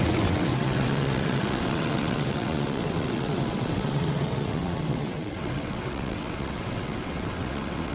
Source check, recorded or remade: remade